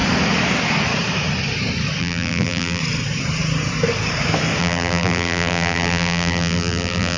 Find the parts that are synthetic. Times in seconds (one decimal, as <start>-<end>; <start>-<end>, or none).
2.0-2.8; 4.6-7.2